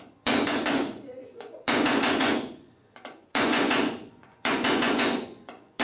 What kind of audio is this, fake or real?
fake